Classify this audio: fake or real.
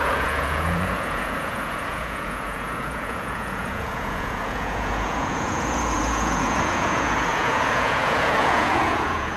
fake